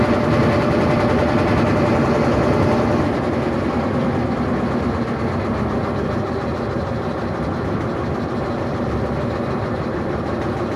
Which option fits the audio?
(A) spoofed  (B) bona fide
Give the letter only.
B